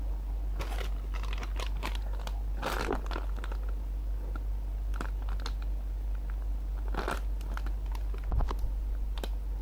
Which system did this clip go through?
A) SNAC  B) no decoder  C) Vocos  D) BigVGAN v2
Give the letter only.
B